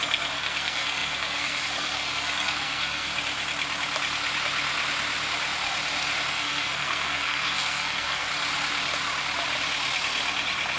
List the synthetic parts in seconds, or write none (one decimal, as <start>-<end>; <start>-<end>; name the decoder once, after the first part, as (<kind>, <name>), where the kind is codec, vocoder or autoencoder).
0.0-3.1 (codec, SNAC); 6.3-8.3